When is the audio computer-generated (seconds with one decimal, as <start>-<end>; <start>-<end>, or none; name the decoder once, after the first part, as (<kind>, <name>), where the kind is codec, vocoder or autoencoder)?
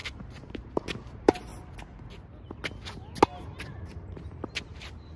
0.0-1.5 (vocoder, BigVGAN v2); 3.7-5.2